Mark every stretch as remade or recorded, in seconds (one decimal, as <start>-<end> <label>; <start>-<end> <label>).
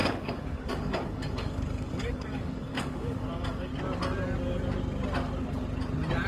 0.0-3.7 remade; 3.7-6.3 recorded